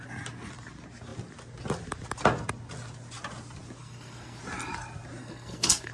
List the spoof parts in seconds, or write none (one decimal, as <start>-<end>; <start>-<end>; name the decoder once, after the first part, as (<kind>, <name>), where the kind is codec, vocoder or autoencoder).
3.8-4.4 (codec, SNAC); 5.2-5.9